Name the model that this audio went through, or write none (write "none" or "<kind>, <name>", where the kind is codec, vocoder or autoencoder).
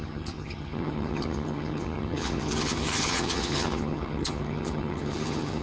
vocoder, HiFi-GAN